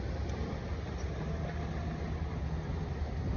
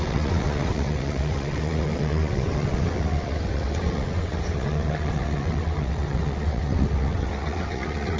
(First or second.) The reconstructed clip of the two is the second